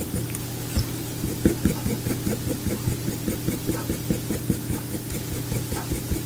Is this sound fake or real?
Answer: real